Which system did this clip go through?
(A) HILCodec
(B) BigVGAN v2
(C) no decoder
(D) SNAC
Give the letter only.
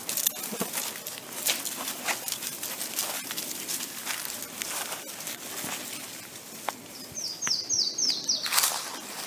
C